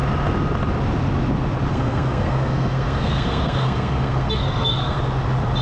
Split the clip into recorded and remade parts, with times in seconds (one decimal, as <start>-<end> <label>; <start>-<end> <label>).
0.0-1.7 recorded; 1.7-5.0 remade; 5.0-5.6 recorded